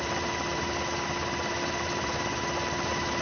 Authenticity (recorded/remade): recorded